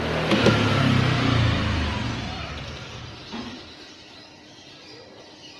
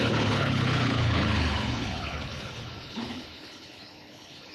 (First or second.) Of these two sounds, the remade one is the second